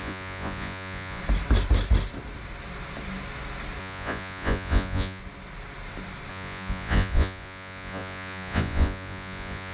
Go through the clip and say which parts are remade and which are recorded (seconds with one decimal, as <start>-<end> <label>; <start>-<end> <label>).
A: 0.0-1.2 remade; 1.2-3.8 recorded; 3.8-5.2 remade; 5.2-6.3 recorded; 6.3-9.7 remade